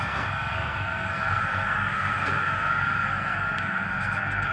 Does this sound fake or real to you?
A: fake